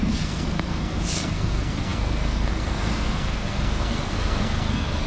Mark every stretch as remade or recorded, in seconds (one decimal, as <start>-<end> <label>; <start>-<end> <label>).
0.0-5.1 remade